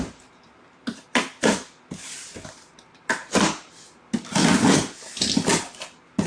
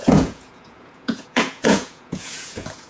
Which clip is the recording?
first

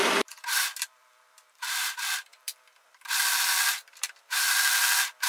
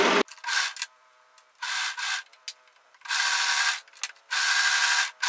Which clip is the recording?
second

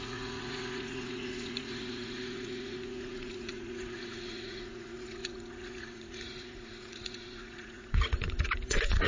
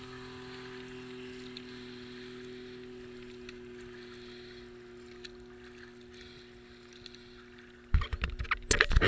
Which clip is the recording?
second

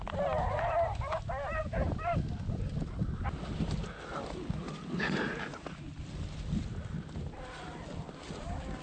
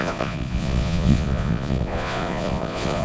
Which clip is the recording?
first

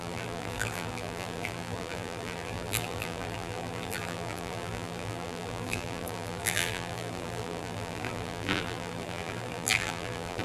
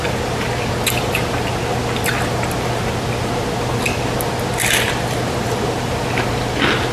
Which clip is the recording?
second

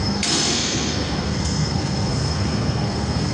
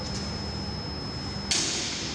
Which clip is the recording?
second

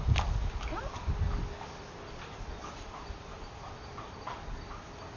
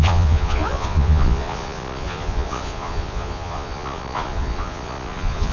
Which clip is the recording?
first